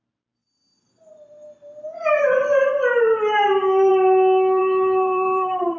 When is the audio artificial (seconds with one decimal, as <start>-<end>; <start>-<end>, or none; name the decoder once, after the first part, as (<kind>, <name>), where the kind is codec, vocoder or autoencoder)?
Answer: 4.6-5.8 (vocoder, BigVGAN v2)